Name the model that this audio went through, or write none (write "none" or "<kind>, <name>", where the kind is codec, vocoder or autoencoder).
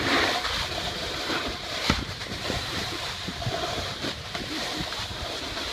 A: vocoder, BigVGAN v2